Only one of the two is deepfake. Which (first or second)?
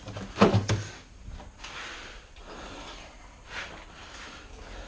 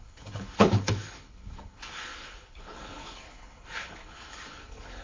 second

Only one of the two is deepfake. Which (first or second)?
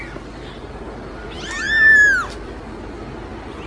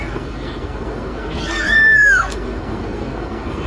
second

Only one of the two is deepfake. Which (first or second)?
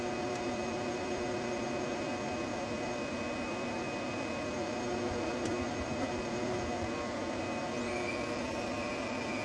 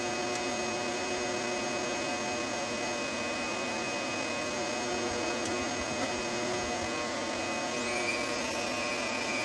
first